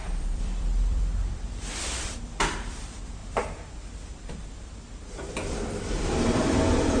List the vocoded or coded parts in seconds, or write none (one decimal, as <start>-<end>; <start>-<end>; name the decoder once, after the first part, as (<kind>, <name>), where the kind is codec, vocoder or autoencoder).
0.0-7.0 (vocoder, BigVGAN v2)